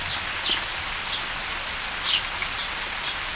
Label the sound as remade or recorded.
recorded